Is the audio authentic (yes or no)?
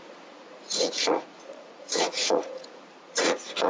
no